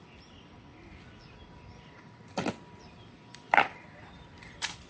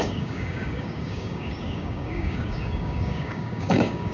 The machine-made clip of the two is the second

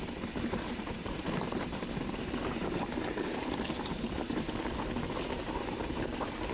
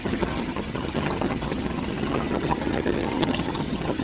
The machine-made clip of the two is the second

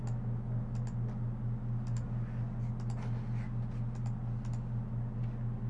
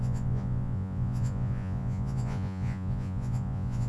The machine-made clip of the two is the second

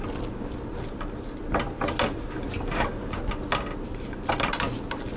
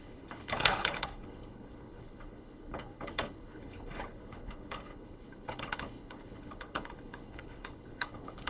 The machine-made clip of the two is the second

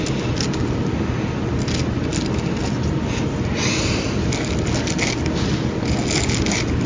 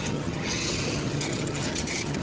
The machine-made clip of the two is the second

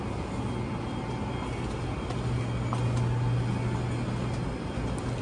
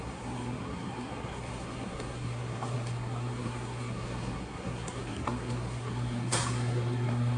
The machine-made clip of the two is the second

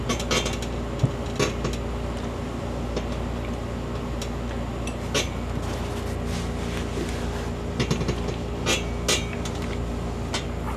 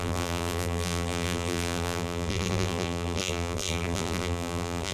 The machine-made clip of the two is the second